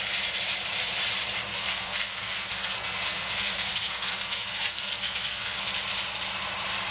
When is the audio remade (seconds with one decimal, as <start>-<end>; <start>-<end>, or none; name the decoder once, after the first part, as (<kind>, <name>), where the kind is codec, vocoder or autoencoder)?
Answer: 1.5-5.6 (codec, SNAC)